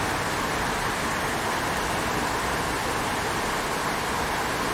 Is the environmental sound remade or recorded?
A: recorded